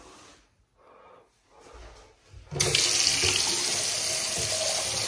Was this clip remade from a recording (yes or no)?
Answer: no